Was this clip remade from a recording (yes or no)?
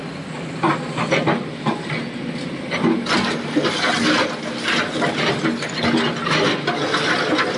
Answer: no